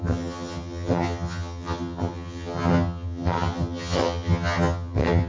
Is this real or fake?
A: fake